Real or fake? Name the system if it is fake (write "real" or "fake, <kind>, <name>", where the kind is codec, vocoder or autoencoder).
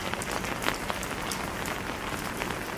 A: real